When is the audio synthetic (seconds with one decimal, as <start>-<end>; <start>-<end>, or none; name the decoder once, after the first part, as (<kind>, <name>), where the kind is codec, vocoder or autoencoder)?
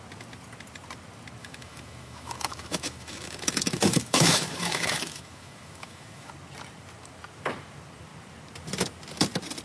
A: 1.4-6.3 (autoencoder, DAC-VAE)